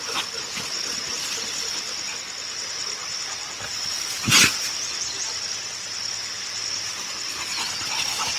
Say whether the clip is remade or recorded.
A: recorded